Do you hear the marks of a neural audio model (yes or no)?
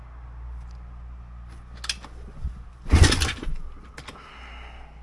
no